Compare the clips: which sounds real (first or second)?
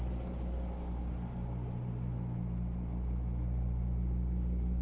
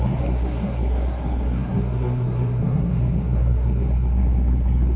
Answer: first